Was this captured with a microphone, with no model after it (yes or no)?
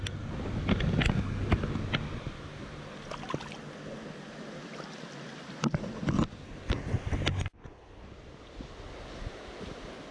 yes